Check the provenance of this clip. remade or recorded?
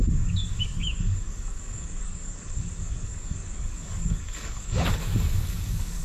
remade